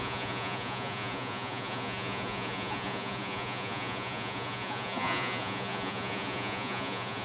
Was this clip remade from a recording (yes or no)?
yes